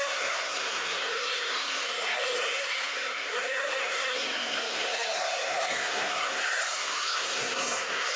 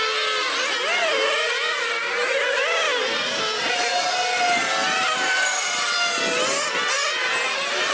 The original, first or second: second